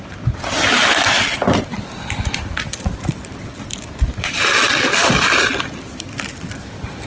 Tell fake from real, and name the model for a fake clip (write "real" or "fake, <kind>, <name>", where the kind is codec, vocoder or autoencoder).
real